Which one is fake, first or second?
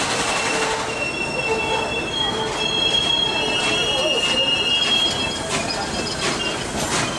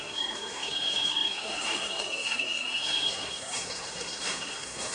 second